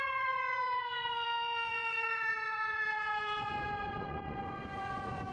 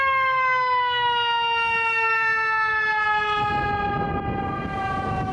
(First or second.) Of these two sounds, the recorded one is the second